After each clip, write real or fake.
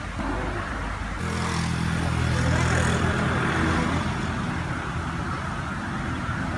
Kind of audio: real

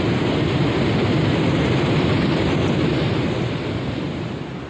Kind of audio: real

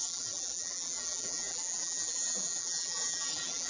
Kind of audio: fake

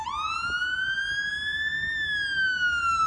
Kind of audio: real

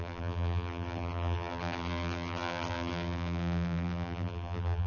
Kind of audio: fake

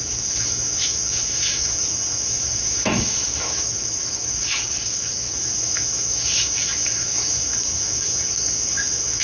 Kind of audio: fake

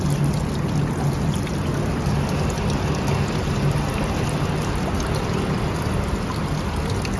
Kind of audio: real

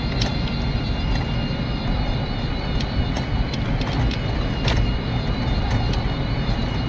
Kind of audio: real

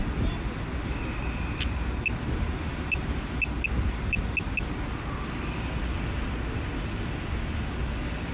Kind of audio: real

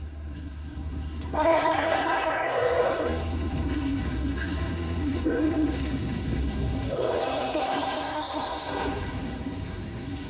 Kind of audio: fake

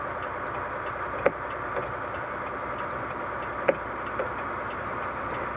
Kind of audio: real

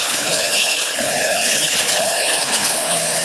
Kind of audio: fake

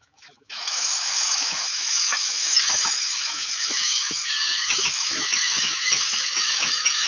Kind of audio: fake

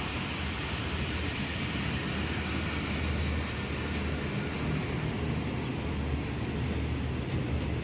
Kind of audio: real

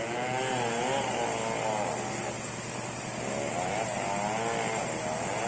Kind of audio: real